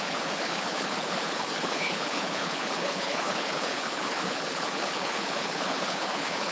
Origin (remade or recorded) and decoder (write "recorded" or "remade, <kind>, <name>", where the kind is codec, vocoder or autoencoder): remade, codec, HILCodec